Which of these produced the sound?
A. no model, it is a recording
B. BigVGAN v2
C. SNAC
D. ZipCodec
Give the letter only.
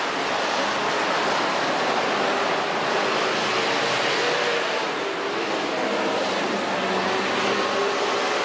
A